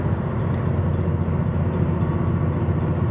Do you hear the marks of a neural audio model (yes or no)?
no